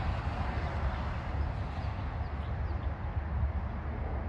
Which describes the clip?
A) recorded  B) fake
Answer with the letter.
A